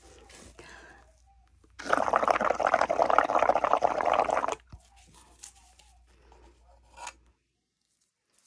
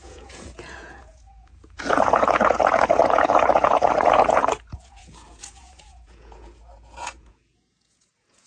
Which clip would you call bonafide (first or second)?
first